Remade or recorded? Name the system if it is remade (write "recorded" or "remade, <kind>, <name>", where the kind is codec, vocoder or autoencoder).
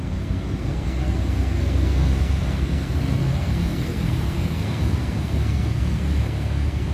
remade, codec, SNAC